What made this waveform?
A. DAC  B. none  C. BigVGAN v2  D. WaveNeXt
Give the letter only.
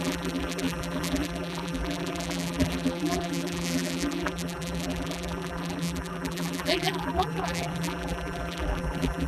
C